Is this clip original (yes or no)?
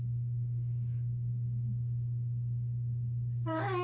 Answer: yes